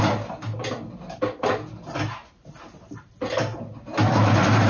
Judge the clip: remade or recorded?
recorded